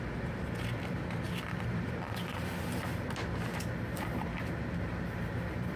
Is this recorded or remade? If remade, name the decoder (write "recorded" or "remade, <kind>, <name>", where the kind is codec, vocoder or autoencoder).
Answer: remade, vocoder, BigVGAN v2